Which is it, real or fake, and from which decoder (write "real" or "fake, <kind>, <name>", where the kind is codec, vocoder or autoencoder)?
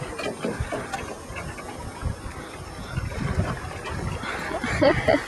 real